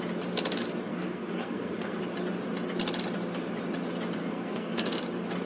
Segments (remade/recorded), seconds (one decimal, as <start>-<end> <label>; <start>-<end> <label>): 0.0-0.9 recorded; 0.9-2.0 remade; 2.0-4.2 recorded; 4.2-5.0 remade; 5.0-5.5 recorded